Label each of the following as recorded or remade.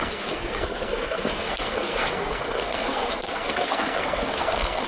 remade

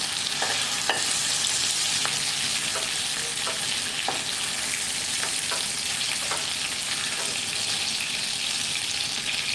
recorded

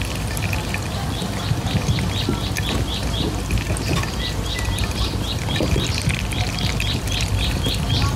recorded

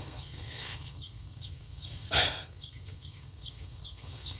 remade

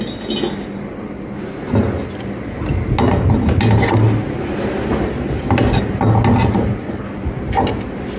recorded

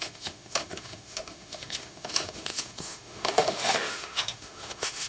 remade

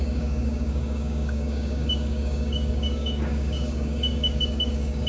remade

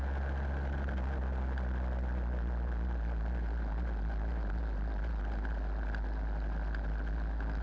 recorded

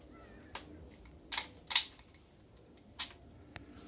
recorded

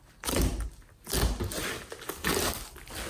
recorded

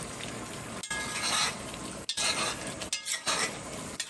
recorded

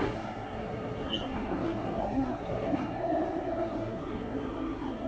remade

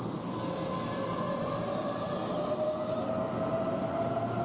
recorded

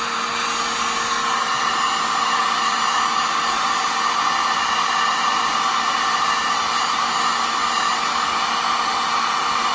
recorded